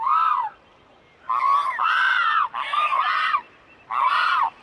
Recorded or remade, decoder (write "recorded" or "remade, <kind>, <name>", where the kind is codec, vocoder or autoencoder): recorded